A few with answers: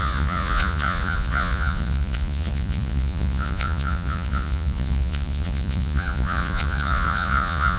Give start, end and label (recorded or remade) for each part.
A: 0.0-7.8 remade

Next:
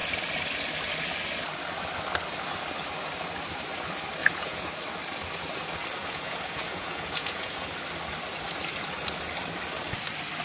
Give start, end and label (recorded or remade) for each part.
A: 0.0-4.2 recorded; 4.2-4.7 remade; 4.7-6.0 recorded; 6.0-7.7 remade; 7.7-10.4 recorded

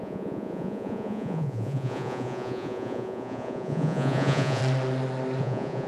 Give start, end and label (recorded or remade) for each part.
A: 0.0-4.6 remade; 4.6-5.4 recorded; 5.4-5.9 remade

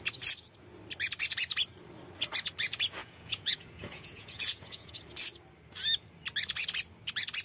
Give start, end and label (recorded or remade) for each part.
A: 0.0-3.0 recorded; 3.0-4.9 remade; 4.9-7.4 recorded

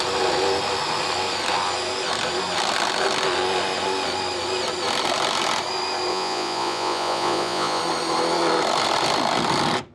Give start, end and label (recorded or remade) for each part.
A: 0.0-6.1 recorded; 6.1-7.8 remade; 7.8-9.9 recorded

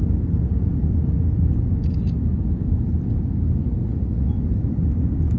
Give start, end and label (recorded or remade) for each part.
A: 0.0-3.8 recorded; 3.8-4.3 remade; 4.3-5.4 recorded